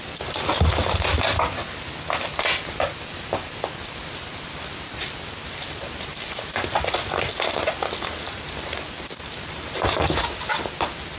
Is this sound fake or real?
real